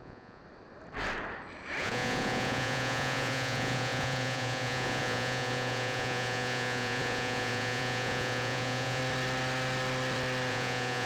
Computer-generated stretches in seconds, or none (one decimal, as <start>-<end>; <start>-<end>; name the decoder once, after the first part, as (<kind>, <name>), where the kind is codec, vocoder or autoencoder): 0.0-0.4 (vocoder, Vocos); 1.8-9.0; 10.5-11.1